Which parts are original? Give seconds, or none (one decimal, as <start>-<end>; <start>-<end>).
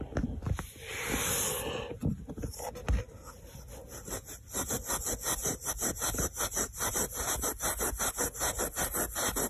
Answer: 0.0-5.4; 7.5-9.5